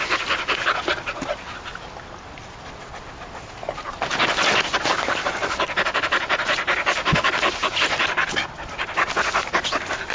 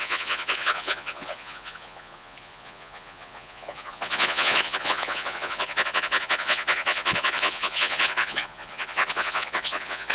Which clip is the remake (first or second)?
second